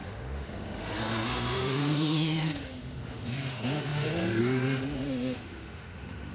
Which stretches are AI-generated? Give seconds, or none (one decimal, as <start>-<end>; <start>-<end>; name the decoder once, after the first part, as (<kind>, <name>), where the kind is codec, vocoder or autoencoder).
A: 0.0-6.3 (autoencoder, DAC-VAE)